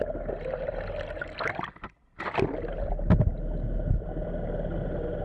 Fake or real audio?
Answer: real